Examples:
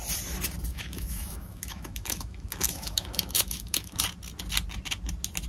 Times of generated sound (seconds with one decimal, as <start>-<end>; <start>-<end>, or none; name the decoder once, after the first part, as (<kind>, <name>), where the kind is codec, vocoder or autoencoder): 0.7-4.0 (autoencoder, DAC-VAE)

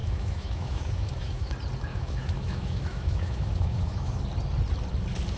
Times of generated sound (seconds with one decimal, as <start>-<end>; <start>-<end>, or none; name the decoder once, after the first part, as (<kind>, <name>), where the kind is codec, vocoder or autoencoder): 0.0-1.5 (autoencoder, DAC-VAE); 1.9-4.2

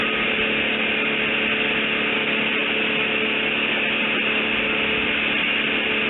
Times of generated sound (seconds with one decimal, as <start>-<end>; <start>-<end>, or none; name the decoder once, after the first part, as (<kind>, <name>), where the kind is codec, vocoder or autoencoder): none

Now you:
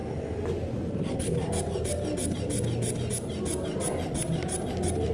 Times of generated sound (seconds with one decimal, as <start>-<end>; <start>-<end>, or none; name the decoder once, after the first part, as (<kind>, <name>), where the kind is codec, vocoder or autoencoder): none